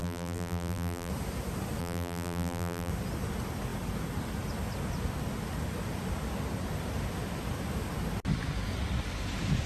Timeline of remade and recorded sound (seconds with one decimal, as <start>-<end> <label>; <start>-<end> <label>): 0.0-1.1 remade; 1.1-1.8 recorded; 1.8-2.9 remade; 2.9-9.7 recorded